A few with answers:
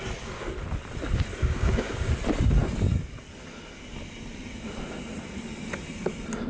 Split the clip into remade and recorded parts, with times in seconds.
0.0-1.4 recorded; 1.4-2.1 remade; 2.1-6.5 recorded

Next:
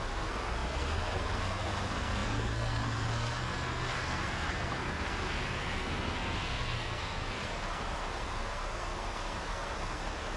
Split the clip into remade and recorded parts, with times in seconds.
0.0-10.4 remade

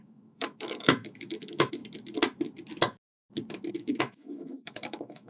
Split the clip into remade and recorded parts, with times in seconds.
0.0-1.8 remade; 1.8-3.7 recorded; 3.7-5.3 remade

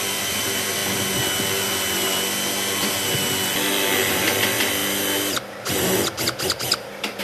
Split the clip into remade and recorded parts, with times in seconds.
0.0-0.8 remade; 0.8-4.1 recorded; 4.1-4.8 remade; 4.8-7.2 recorded

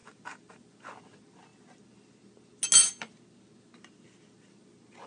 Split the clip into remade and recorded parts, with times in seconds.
0.0-5.1 recorded

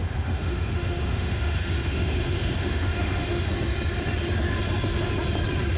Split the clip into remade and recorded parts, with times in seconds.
0.0-3.5 remade; 3.5-5.8 recorded